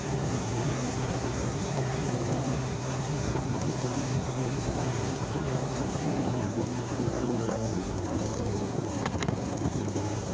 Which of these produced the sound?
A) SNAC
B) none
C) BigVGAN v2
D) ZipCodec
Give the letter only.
A